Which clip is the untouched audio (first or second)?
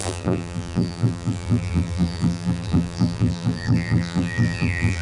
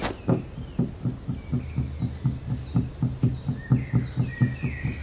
second